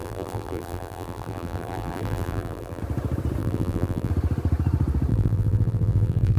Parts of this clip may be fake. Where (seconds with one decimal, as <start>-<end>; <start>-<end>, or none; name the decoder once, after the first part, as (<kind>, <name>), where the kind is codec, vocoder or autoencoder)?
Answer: 0.0-2.8 (vocoder, BigVGAN v2); 3.4-4.1; 5.1-6.4